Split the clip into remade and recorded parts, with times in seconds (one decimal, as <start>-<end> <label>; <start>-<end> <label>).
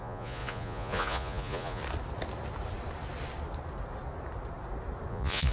0.0-1.8 remade; 1.8-5.1 recorded; 5.1-5.5 remade